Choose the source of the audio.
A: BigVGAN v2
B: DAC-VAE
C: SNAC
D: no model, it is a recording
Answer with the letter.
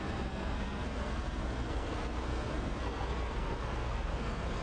C